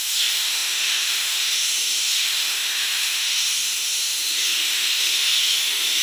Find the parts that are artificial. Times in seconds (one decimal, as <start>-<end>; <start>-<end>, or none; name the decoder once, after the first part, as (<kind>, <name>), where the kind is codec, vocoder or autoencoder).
0.0-6.0 (autoencoder, DAC-VAE)